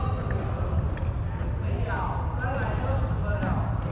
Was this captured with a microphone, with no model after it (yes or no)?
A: yes